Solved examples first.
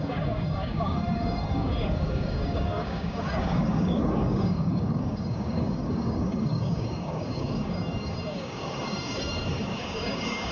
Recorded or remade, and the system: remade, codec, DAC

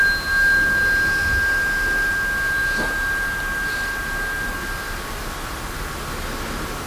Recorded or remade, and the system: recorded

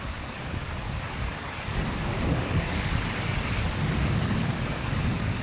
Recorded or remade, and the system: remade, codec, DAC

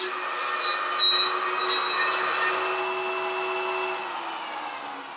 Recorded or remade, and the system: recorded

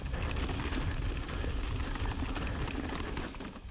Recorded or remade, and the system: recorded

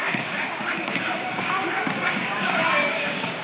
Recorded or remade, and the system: remade, codec, DAC